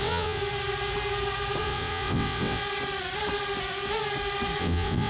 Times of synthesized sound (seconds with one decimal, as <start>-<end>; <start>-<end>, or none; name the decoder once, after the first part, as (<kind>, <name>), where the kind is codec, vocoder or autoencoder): 0.0-0.4 (vocoder, WaveNeXt); 1.6-2.6; 4.6-5.1